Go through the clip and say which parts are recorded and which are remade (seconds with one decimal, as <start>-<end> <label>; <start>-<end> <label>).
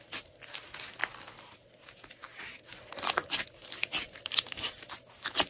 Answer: 0.0-5.5 recorded